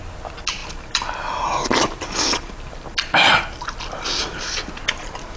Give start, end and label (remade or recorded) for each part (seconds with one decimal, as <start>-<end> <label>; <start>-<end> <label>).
0.0-5.4 recorded